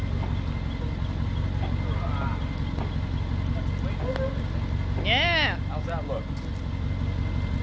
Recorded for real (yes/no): yes